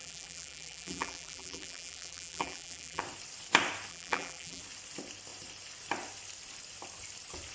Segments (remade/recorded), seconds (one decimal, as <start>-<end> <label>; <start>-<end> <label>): 0.0-3.0 remade; 3.0-3.9 recorded; 3.9-4.6 remade; 4.6-7.5 recorded